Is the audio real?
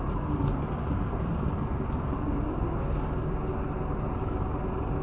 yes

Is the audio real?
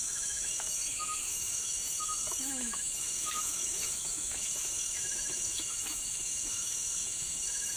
no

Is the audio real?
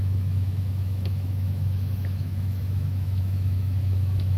no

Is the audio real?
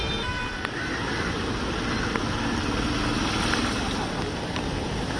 yes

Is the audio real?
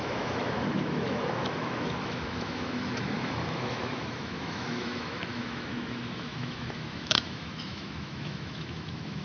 no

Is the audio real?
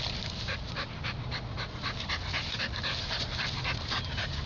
yes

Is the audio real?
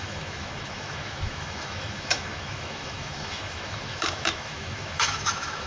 no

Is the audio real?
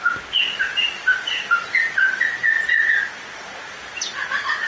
yes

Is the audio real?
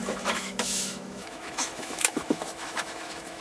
no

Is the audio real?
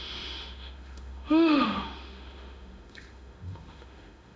no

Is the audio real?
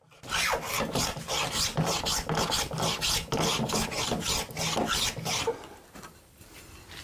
yes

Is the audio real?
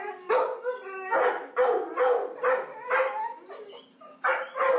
yes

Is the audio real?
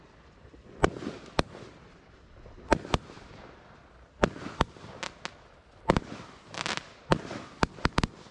yes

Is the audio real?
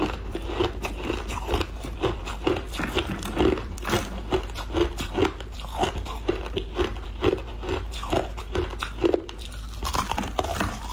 yes